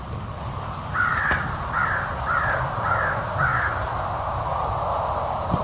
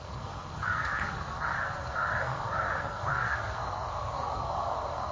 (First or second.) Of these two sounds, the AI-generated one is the second